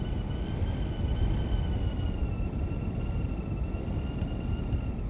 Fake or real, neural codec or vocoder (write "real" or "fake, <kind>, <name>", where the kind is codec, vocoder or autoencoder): real